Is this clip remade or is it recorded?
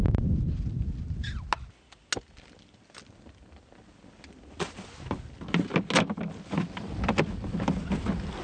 recorded